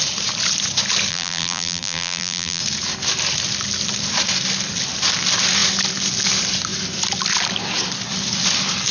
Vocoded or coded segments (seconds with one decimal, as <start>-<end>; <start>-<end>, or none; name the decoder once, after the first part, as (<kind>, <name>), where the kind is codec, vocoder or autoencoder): 1.1-2.6 (vocoder, BigVGAN v2)